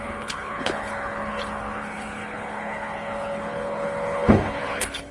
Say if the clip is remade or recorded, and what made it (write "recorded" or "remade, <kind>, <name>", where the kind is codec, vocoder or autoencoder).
remade, codec, HILCodec